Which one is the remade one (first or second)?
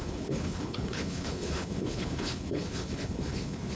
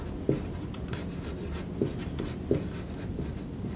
first